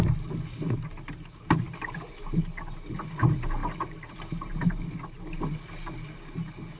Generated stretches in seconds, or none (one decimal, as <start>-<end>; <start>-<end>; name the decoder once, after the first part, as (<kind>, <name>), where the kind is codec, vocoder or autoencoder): 3.6-4.8 (vocoder, BigVGAN v2)